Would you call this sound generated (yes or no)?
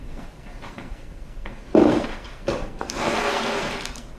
yes